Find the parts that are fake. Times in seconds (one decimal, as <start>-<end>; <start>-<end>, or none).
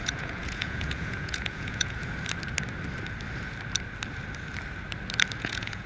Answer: 0.0-2.0; 5.4-5.9